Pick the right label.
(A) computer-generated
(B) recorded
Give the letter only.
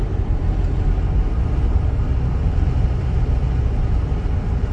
B